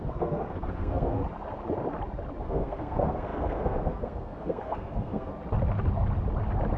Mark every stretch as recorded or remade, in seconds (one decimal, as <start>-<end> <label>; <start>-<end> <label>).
0.0-1.2 remade; 1.2-2.4 recorded; 2.4-5.3 remade; 5.3-6.8 recorded